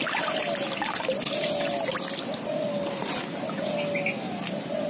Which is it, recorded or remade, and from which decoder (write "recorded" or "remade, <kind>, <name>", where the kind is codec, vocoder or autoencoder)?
recorded